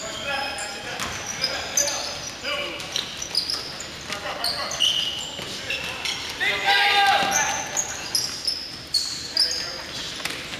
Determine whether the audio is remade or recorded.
recorded